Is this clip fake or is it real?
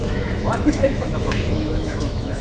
fake